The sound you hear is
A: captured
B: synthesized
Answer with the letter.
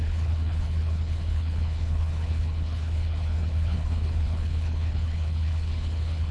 B